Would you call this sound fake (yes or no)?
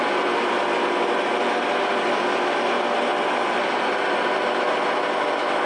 no